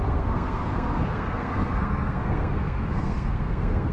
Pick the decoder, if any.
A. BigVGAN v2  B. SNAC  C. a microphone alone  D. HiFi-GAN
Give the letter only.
B